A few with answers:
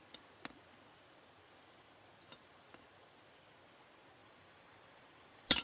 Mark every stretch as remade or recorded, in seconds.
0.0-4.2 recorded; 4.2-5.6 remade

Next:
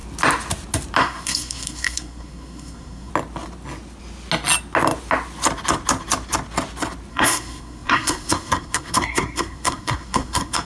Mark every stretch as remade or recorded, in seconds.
0.0-1.0 recorded; 1.0-3.1 remade; 3.1-7.1 recorded; 7.1-10.6 remade

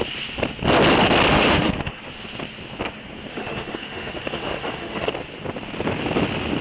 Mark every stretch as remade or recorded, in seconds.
0.0-1.3 recorded; 1.3-2.0 remade; 2.0-3.3 recorded; 3.3-5.1 remade; 5.1-6.6 recorded

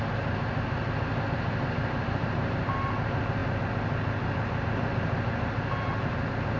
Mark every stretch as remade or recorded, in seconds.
0.0-6.6 recorded

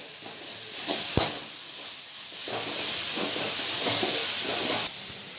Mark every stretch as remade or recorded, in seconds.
0.0-5.4 recorded

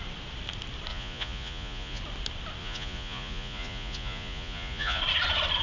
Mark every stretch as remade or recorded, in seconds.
0.0-0.9 recorded; 0.9-2.0 remade; 2.0-2.6 recorded; 2.6-5.0 remade; 5.0-5.6 recorded

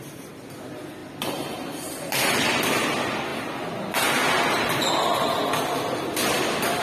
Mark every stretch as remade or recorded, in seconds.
0.0-6.8 recorded

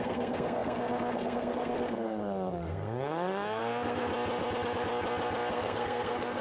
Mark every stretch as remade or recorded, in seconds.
0.0-4.1 remade; 4.1-5.5 recorded; 5.5-6.4 remade